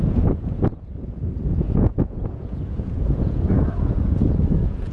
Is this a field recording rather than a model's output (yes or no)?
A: no